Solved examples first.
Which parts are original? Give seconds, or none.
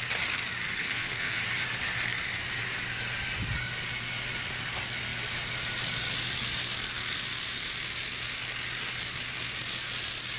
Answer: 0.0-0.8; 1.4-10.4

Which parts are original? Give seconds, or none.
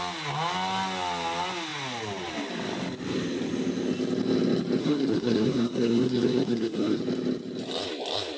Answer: 0.0-4.8; 7.0-8.4